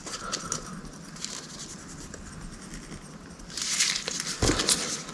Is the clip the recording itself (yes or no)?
yes